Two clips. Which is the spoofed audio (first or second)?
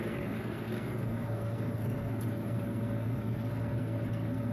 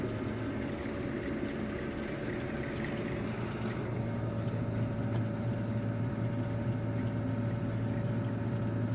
first